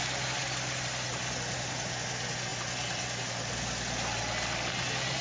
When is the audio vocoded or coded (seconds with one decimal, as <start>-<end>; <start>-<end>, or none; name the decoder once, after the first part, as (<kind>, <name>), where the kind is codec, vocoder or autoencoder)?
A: none